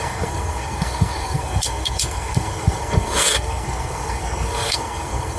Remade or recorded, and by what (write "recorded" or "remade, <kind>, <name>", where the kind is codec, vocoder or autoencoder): remade, codec, SNAC